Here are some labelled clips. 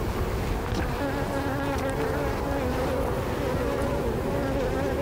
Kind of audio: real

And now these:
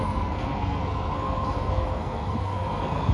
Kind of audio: fake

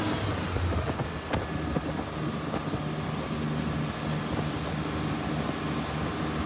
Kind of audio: real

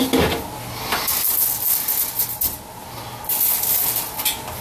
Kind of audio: real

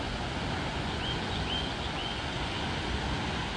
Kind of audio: fake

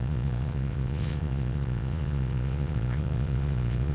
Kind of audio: fake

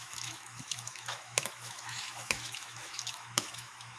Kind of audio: fake